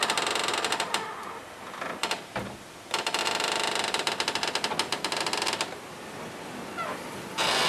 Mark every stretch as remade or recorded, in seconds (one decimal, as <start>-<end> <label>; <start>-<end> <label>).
0.0-0.5 remade; 0.5-2.0 recorded; 2.0-3.2 remade; 3.2-5.9 recorded; 5.9-7.7 remade